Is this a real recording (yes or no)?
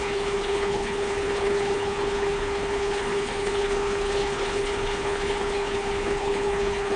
no